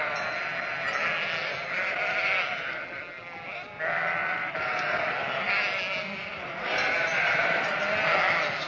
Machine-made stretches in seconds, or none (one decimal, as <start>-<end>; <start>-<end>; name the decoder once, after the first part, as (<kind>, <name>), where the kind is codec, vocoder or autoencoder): 4.2-5.0 (vocoder, BigVGAN v2); 6.3-7.7